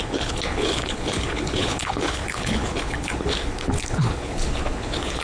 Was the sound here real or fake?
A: fake